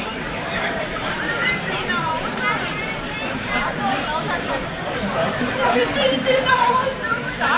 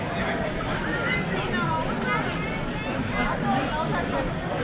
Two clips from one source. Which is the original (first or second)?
second